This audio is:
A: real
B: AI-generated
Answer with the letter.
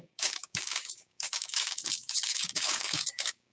B